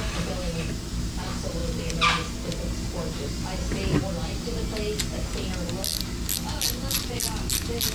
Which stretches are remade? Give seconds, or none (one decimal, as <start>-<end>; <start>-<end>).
none